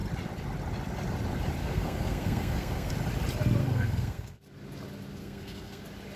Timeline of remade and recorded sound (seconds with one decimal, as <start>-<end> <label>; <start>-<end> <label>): 0.0-1.6 recorded; 1.6-2.9 remade; 2.9-3.6 recorded; 3.6-4.4 remade; 4.4-5.2 recorded; 5.2-5.8 remade; 5.8-6.2 recorded